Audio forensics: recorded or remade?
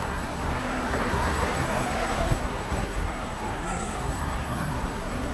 remade